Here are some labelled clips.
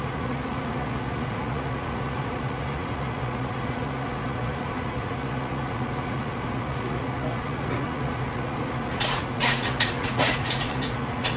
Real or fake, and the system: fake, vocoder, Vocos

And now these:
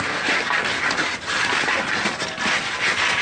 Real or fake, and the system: real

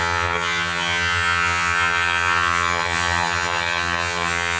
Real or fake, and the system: fake, vocoder, HiFi-GAN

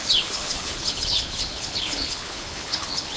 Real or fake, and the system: fake, codec, HILCodec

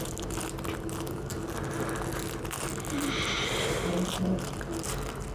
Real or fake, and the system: real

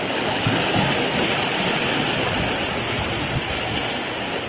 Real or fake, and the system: real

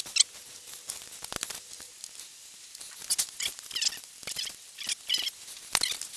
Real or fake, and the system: real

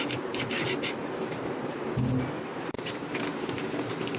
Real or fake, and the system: real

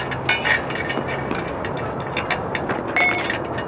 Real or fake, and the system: real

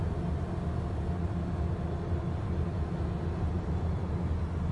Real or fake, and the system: real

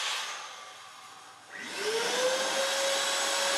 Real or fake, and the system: real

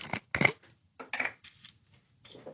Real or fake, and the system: real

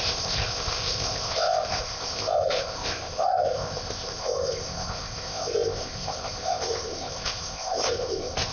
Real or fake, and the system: fake, codec, ZipCodec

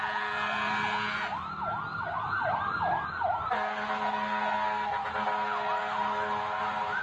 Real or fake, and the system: real